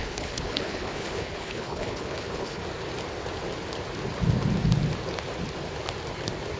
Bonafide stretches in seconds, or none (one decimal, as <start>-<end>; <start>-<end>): 2.6-6.6